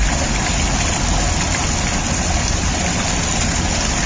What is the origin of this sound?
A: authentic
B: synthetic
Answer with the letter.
A